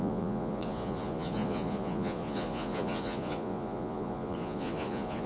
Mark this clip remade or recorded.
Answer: remade